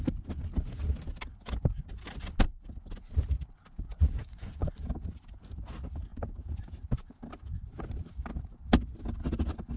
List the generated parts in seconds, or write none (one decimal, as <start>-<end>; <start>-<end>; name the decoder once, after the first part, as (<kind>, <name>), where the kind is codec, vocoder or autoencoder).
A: 4.2-4.8 (vocoder, Vocos)